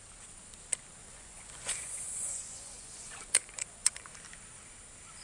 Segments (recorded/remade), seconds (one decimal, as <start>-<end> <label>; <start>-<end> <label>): 0.0-1.0 recorded; 1.0-4.1 remade; 4.1-5.2 recorded